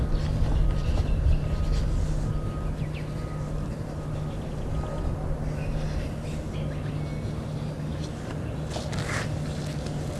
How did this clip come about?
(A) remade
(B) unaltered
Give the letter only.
B